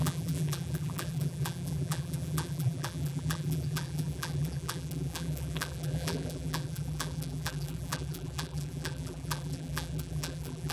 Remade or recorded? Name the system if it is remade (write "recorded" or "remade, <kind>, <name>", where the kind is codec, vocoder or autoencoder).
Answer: remade, vocoder, BigVGAN v2